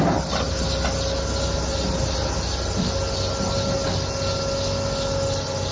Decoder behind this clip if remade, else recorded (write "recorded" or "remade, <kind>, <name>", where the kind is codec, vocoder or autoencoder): recorded